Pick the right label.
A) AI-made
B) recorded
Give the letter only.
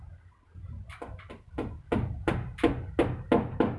B